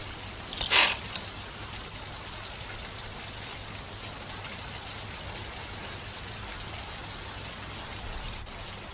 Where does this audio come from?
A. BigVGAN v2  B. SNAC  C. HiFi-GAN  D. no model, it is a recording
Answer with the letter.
D